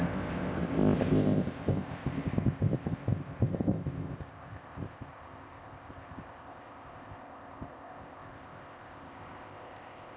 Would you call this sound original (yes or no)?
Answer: no